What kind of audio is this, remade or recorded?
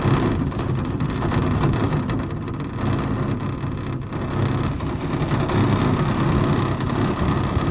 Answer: recorded